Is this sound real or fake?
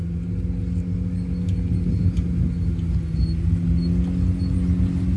real